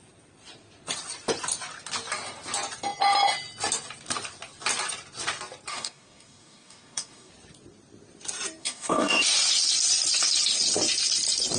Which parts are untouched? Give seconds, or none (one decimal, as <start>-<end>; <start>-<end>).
0.0-5.7; 7.3-8.6; 9.2-11.6